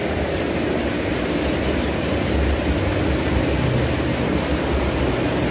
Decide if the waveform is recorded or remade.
recorded